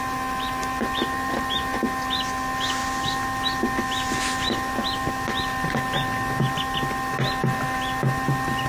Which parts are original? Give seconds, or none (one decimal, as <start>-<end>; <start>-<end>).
0.0-8.7